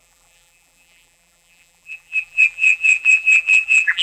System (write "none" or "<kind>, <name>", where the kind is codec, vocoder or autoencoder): vocoder, BigVGAN v2